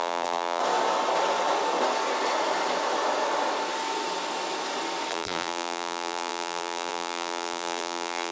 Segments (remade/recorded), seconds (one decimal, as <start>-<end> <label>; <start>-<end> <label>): 0.0-0.6 remade; 0.6-5.1 recorded; 5.1-8.3 remade